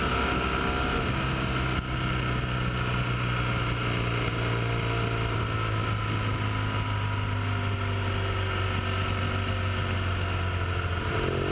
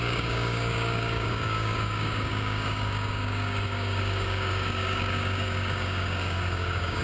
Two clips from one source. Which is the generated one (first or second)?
second